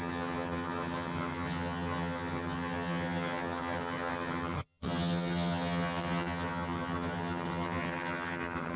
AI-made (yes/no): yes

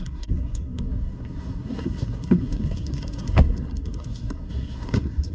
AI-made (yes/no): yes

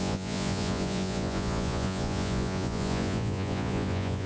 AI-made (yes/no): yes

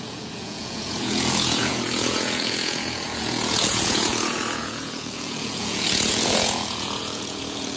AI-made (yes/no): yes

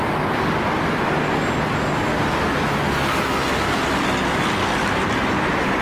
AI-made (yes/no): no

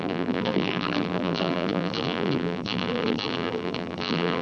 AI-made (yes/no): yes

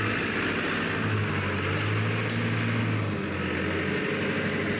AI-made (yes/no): no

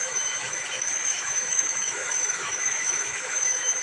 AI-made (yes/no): yes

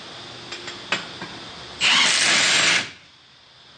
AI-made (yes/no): no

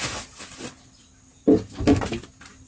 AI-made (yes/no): no